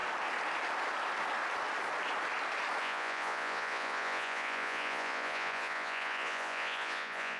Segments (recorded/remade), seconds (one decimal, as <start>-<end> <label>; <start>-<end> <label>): 0.0-2.8 recorded; 2.8-7.4 remade